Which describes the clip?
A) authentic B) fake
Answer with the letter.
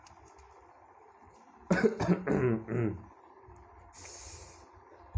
A